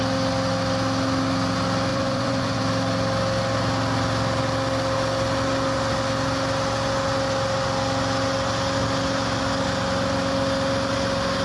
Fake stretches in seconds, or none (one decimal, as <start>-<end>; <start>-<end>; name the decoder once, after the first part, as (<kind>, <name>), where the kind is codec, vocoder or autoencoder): 1.9-2.6 (vocoder, Vocos)

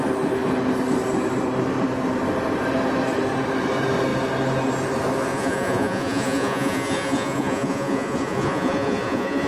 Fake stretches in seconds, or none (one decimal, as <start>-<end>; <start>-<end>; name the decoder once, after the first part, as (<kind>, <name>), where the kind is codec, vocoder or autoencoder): 5.3-9.5 (vocoder, Vocos)

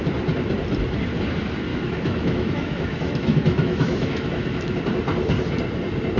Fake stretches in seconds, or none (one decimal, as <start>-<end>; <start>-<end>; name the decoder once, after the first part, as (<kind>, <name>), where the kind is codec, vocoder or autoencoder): 1.7-4.8 (autoencoder, DAC-VAE)

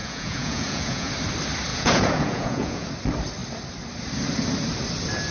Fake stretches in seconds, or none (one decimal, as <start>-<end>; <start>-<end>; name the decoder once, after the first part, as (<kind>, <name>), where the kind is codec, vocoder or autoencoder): 0.0-1.1 (vocoder, Vocos); 1.7-2.9

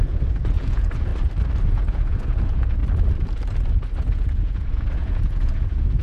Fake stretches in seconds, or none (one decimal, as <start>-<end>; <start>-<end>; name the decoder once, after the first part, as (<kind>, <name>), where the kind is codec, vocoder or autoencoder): 0.0-1.1 (vocoder, Vocos); 1.7-2.8; 4.0-6.0

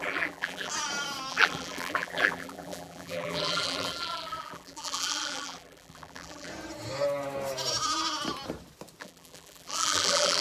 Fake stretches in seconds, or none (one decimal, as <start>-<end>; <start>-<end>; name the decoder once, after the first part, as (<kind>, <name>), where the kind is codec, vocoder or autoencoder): 0.0-0.7 (vocoder, BigVGAN v2); 1.3-6.5; 9.0-10.4

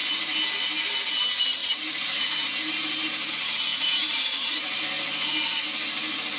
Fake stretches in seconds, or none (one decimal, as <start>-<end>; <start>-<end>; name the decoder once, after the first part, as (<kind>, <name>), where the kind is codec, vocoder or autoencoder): 1.6-3.3 (vocoder, BigVGAN v2); 3.7-4.8

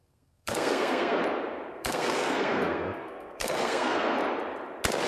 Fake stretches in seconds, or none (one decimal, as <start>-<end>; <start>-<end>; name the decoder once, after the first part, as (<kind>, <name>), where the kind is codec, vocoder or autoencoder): 0.0-1.2 (codec, SNAC); 1.7-4.2